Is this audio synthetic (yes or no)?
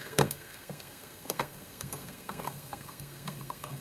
yes